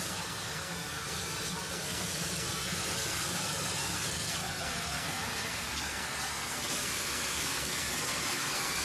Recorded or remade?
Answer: remade